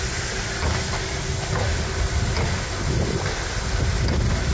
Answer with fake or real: real